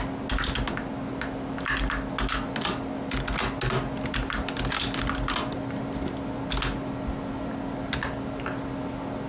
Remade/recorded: recorded